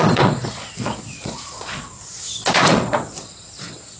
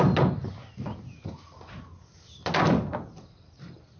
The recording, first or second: second